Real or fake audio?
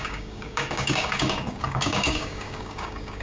fake